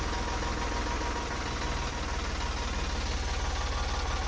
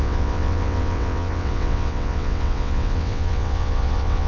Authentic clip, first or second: first